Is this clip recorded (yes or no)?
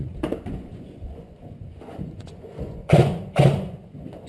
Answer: no